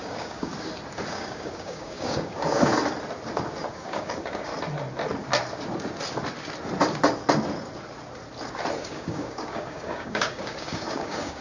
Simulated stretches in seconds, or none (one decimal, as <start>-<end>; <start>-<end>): 0.0-0.5; 1.1-2.7; 3.7-4.5; 8.8-11.4